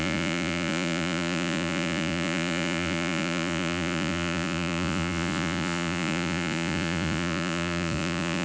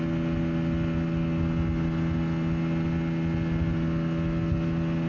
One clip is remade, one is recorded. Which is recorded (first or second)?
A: second